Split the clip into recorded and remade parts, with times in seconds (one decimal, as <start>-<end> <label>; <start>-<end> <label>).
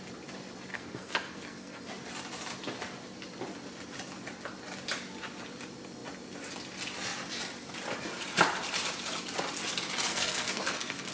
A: 0.0-0.7 recorded; 0.7-1.9 remade; 1.9-10.1 recorded; 10.1-11.1 remade